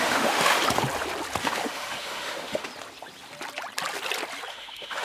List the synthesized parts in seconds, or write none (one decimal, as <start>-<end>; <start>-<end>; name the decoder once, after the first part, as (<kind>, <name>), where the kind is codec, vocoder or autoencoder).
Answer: 0.0-0.6 (autoencoder, DAC-VAE); 1.4-2.7; 4.5-5.0